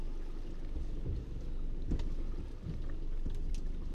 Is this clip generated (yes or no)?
no